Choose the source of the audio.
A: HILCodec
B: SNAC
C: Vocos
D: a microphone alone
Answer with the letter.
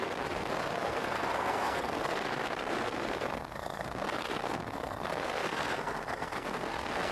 B